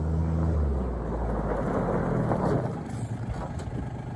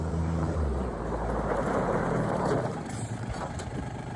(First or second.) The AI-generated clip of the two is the second